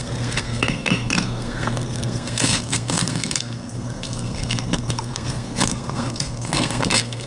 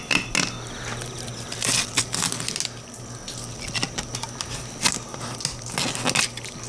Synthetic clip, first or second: first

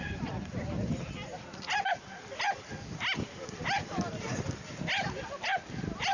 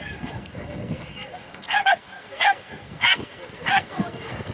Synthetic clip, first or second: second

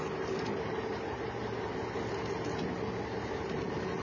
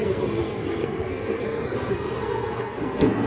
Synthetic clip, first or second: second